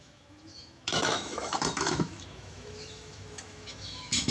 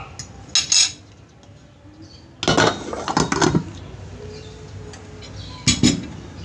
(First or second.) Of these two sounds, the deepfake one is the first